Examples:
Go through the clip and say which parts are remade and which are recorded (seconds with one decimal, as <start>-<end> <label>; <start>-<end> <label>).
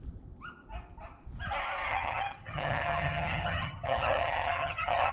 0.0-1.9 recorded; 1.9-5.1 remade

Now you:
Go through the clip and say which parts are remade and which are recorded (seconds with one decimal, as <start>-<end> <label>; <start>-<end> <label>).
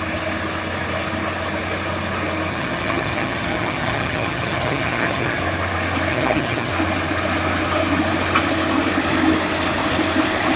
0.0-2.5 recorded; 2.5-5.4 remade; 5.4-6.1 recorded; 6.1-6.7 remade; 6.7-10.6 recorded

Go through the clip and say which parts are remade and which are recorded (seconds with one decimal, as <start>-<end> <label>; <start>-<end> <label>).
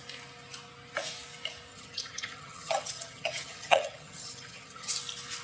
0.0-1.7 recorded; 1.7-4.9 remade; 4.9-5.4 recorded